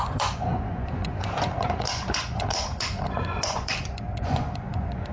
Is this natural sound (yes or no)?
no